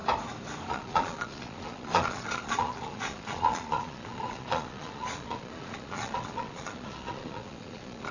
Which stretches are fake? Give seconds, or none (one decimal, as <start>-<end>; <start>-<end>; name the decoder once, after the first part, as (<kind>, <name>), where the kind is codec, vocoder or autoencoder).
0.7-8.1 (vocoder, Vocos)